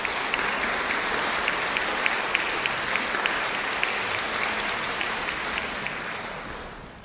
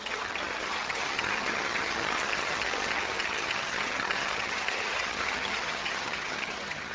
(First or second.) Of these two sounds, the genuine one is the first